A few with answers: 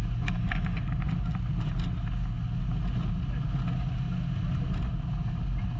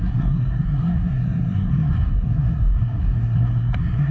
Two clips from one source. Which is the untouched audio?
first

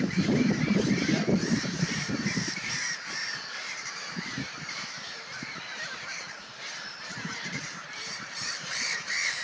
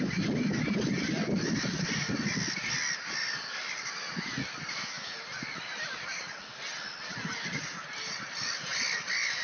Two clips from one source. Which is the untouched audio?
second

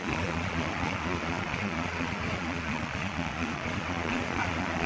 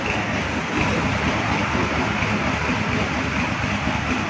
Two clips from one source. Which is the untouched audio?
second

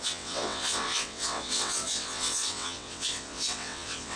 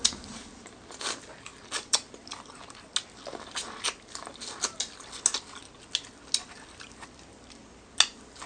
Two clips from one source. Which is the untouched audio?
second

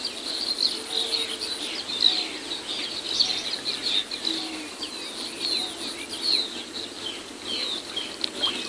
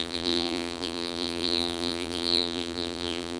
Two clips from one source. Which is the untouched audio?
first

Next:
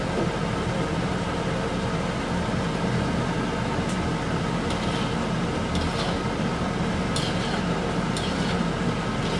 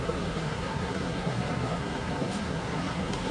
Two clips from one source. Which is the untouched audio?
first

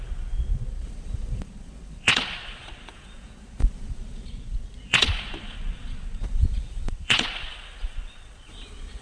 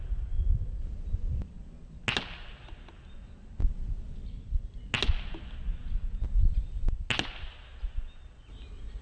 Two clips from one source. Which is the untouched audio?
second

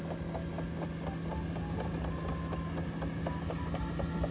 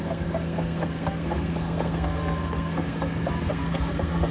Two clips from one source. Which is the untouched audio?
first